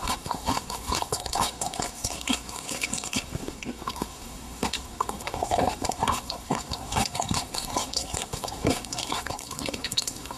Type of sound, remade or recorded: remade